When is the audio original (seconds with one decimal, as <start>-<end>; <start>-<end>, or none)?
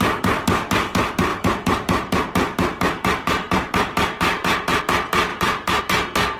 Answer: 0.0-1.3; 4.8-5.3; 5.8-6.4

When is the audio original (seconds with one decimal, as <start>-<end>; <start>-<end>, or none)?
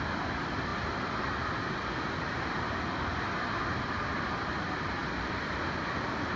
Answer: 0.0-6.4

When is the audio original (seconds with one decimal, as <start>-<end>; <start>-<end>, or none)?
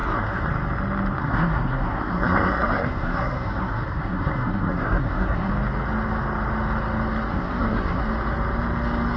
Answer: 0.5-1.2; 5.5-7.3; 8.0-9.2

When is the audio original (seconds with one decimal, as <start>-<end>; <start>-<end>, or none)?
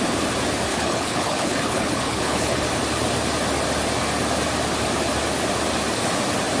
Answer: 0.0-0.7; 2.7-6.6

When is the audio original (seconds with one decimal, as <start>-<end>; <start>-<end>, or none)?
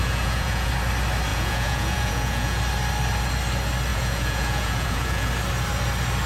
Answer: 0.7-1.3; 2.6-3.9; 5.3-6.3